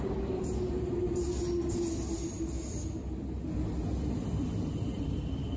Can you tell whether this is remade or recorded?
recorded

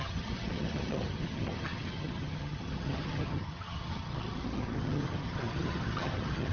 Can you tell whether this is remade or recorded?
remade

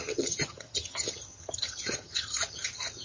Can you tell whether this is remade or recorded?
remade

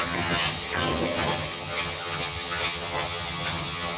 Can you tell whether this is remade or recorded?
remade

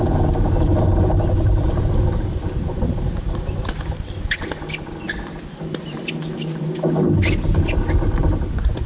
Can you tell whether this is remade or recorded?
recorded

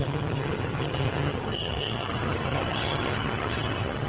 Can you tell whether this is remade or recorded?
remade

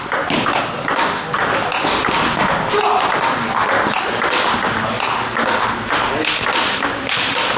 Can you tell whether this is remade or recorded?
recorded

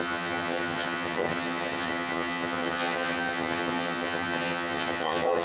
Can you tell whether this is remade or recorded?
remade